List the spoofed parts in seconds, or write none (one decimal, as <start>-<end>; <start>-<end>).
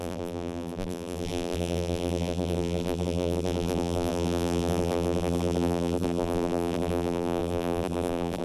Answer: 0.0-8.4